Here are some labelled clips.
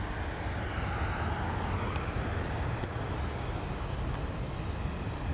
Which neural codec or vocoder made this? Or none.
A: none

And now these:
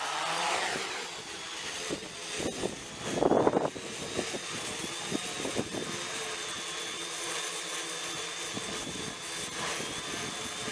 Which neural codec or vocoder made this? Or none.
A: none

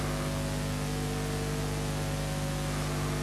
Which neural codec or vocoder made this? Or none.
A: none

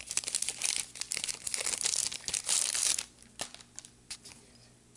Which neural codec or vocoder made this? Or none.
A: none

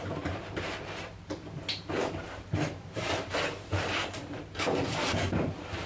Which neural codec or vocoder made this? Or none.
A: vocoder, BigVGAN v2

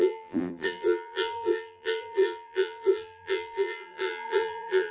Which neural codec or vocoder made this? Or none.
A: vocoder, BigVGAN v2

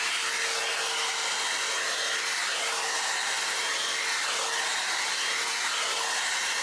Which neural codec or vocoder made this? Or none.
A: none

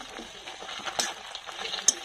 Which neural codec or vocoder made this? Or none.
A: none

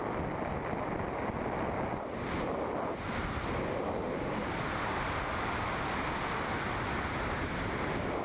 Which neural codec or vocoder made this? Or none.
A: none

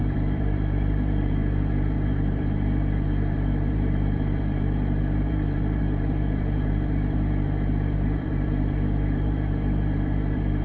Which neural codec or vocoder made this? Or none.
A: vocoder, BigVGAN v2